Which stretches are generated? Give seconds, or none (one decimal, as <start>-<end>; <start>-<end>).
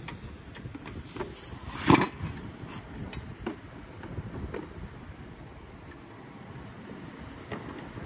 none